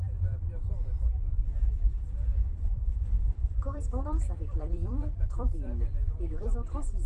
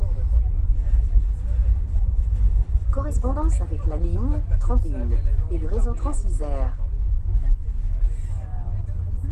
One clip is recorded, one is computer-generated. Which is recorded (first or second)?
second